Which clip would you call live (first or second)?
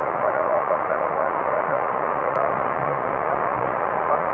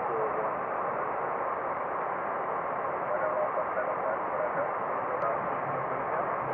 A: second